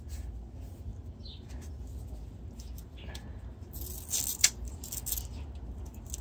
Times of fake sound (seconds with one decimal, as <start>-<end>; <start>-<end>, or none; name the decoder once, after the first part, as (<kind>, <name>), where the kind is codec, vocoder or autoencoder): 0.9-1.5 (vocoder, BigVGAN v2); 4.3-4.9

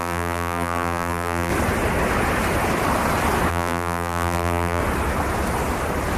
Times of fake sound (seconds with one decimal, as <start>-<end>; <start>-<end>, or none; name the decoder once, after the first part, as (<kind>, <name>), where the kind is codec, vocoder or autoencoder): 0.0-1.5 (vocoder, BigVGAN v2); 3.5-4.8

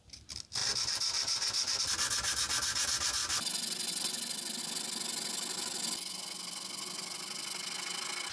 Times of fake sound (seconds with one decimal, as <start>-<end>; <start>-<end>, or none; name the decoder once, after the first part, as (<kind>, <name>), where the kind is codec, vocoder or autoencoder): none

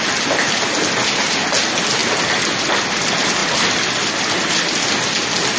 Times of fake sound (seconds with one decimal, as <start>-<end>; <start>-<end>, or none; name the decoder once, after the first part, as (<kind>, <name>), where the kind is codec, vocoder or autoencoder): none

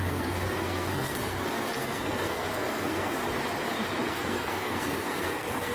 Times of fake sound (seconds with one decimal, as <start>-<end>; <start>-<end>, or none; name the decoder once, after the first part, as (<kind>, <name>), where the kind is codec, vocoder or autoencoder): 0.0-3.2 (codec, SNAC); 4.1-5.7